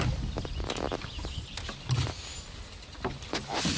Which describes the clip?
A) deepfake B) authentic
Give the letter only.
B